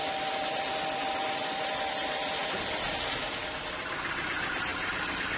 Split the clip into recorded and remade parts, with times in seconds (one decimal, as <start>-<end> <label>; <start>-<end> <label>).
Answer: 0.0-0.6 remade; 0.6-2.0 recorded; 2.0-2.5 remade; 2.5-5.4 recorded